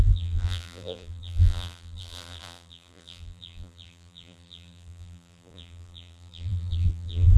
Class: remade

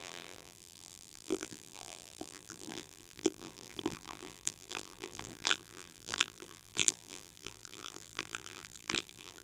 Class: remade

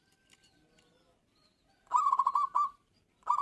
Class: remade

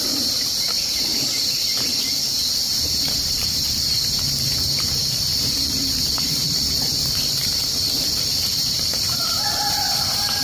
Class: remade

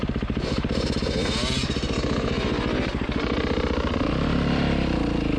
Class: remade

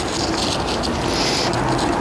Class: recorded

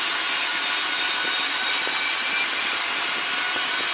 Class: recorded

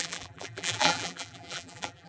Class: remade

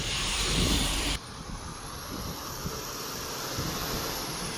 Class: remade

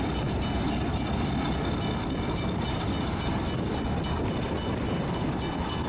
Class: recorded